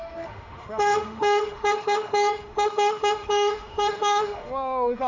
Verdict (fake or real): fake